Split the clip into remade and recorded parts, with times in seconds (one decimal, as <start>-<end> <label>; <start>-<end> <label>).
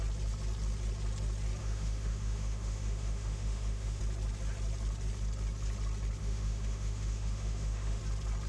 0.0-1.6 recorded; 1.6-4.0 remade; 4.0-6.2 recorded; 6.2-8.0 remade; 8.0-8.5 recorded